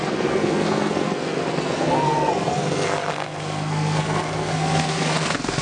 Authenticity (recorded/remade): remade